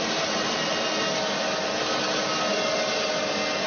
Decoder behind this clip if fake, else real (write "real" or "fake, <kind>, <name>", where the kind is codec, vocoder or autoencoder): real